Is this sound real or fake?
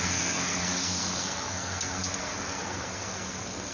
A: fake